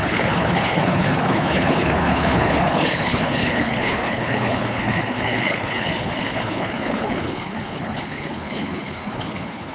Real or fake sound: fake